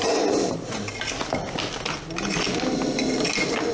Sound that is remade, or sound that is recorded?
recorded